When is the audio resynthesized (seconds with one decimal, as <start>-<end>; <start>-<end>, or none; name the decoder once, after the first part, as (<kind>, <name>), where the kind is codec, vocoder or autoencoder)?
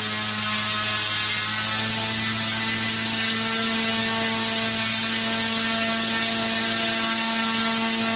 none